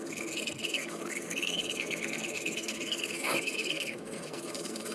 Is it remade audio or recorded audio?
remade